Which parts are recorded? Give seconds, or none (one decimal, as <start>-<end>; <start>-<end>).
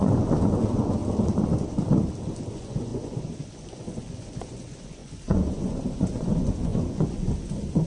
1.0-2.5